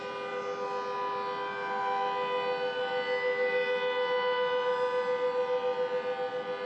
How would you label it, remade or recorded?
recorded